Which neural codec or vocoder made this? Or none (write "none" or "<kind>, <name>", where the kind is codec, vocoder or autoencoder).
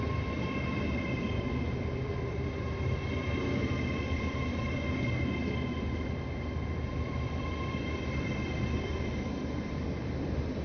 vocoder, BigVGAN v2